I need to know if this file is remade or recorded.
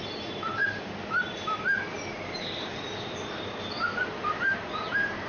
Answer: remade